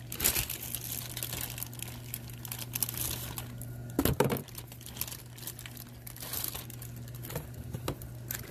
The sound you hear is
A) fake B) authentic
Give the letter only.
B